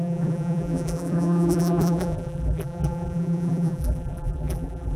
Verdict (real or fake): fake